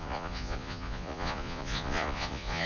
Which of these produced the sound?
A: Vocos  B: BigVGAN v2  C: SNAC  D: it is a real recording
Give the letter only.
A